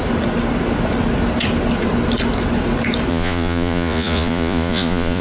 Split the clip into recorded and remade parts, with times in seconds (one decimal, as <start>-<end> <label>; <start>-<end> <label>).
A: 0.0-3.1 recorded; 3.1-5.2 remade